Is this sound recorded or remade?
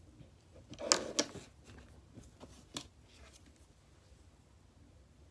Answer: recorded